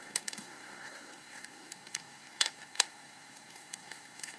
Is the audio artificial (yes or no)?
yes